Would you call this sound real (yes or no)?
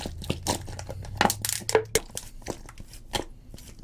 yes